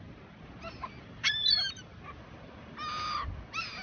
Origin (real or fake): real